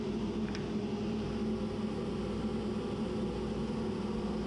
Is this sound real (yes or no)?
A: yes